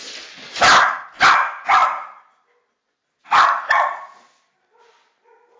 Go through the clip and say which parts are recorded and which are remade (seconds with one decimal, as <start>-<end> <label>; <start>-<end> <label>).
0.0-5.6 recorded